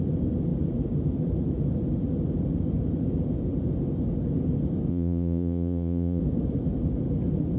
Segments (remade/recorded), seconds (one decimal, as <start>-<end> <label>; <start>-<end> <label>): 0.0-4.9 recorded; 4.9-6.2 remade; 6.2-7.6 recorded